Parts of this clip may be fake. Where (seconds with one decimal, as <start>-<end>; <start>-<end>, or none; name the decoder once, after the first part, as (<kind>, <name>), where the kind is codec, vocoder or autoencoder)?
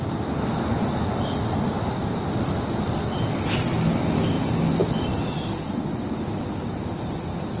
none